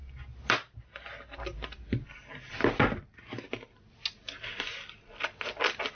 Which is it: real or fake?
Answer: real